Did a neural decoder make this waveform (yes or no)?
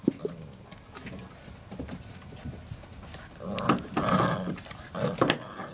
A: no